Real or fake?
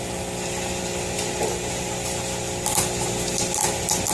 real